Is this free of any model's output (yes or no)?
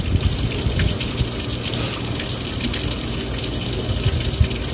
yes